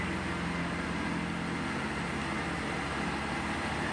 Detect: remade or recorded recorded